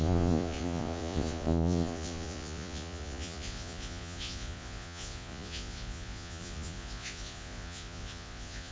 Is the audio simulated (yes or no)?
yes